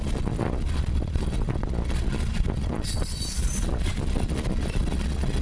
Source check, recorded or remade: remade